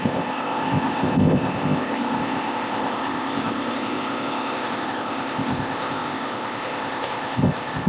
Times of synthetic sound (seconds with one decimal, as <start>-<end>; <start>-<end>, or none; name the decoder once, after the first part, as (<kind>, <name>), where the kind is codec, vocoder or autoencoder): 0.0-7.9 (codec, ZipCodec)